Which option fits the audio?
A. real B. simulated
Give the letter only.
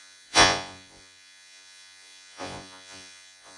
B